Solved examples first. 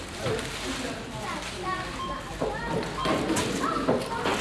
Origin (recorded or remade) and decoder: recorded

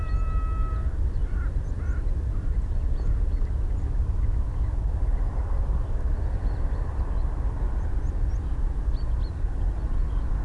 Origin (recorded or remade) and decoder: recorded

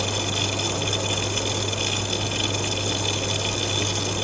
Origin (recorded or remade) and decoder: recorded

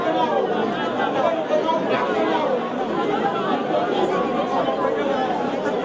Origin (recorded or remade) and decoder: recorded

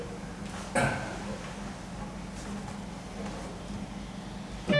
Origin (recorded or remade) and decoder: recorded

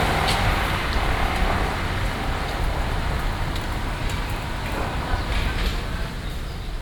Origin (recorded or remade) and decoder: recorded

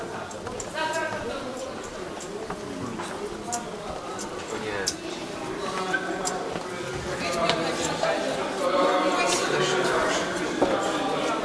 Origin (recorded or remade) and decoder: recorded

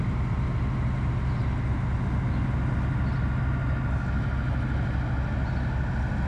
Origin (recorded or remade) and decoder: recorded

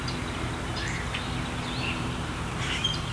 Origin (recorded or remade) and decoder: remade, vocoder, BigVGAN v2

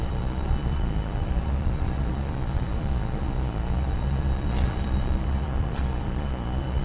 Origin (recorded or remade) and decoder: remade, vocoder, Vocos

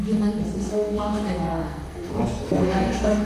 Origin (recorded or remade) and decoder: remade, codec, SNAC